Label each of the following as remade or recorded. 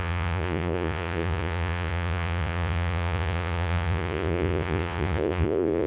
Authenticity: remade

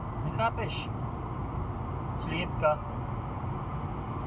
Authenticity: recorded